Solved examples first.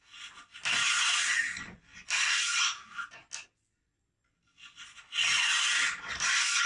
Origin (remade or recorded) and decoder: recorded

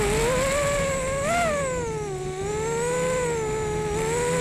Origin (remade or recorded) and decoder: recorded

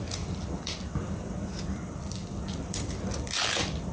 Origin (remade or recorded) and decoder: remade, vocoder, BigVGAN v2